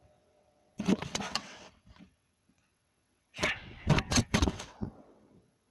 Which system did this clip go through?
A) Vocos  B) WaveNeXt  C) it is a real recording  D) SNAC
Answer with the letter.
B